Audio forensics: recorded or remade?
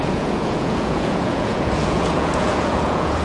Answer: remade